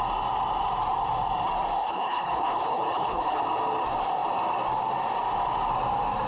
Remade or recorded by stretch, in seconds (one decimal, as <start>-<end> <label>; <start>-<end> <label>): 0.0-1.8 recorded; 1.8-3.4 remade; 3.4-6.3 recorded